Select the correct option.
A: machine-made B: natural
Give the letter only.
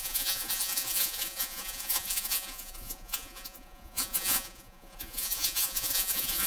A